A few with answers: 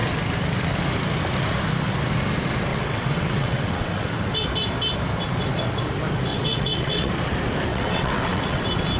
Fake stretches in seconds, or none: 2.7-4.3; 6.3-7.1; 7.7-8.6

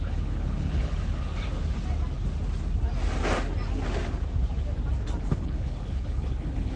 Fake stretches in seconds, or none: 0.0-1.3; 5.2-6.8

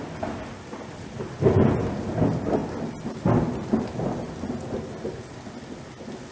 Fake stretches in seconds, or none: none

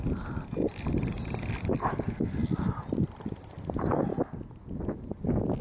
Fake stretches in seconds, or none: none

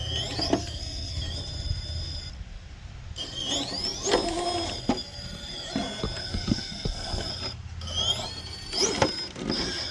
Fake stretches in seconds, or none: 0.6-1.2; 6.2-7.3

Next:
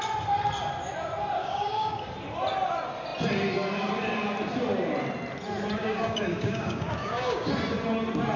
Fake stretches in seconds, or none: 1.4-2.0; 5.8-7.5